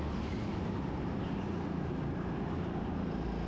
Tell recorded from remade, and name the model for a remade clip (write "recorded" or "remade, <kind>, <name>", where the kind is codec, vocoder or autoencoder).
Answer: remade, vocoder, BigVGAN v2